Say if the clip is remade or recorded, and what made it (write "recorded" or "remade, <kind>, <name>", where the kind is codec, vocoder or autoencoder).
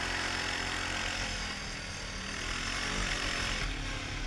recorded